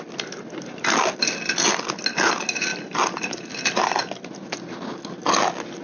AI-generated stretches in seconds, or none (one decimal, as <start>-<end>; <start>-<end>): none

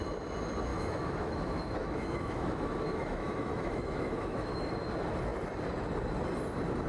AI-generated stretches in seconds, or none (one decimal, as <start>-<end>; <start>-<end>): 0.7-4.7

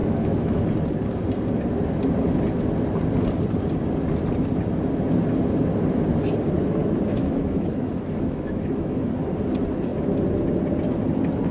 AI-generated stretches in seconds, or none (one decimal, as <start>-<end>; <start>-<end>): 0.0-0.6; 7.1-9.1

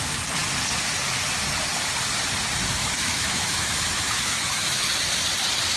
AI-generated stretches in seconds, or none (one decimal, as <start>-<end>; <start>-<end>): 2.8-4.9

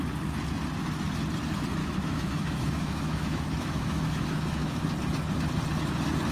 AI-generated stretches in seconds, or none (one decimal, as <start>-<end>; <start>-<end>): 1.8-4.8